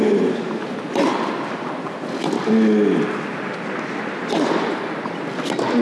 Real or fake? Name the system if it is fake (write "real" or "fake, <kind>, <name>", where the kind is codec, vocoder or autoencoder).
real